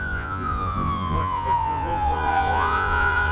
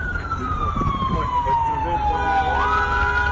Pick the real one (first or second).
second